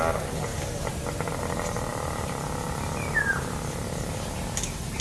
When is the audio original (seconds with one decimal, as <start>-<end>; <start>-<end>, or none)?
0.0-5.0